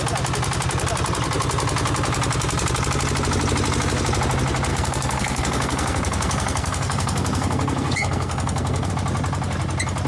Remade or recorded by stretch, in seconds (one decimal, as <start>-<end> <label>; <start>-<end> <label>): 0.0-4.7 recorded; 4.7-8.9 remade; 8.9-10.1 recorded

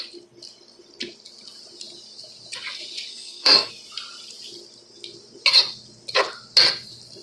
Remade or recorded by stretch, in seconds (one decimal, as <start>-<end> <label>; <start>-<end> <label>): 0.0-3.1 recorded; 3.1-3.7 remade; 3.7-7.2 recorded

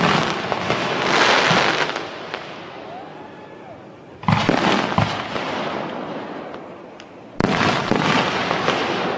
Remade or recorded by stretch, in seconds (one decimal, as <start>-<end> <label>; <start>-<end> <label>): 0.0-9.2 recorded

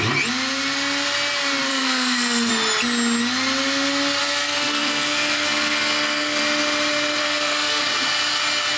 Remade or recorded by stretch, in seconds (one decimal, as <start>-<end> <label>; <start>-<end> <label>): 0.0-1.7 recorded; 1.7-2.5 remade; 2.5-4.2 recorded; 4.2-6.4 remade; 6.4-7.2 recorded; 7.2-7.8 remade; 7.8-8.8 recorded

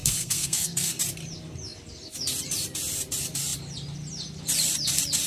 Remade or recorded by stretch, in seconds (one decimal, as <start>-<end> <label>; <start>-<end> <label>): 0.0-1.0 remade; 1.0-5.3 recorded

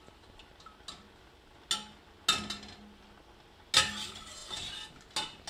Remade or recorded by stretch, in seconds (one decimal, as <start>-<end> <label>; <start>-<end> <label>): 0.0-5.5 recorded